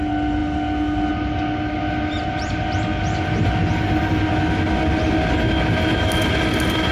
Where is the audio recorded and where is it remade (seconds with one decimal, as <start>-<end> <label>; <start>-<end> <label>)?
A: 0.0-6.9 recorded